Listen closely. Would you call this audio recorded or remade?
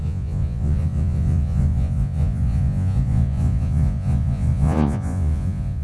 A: remade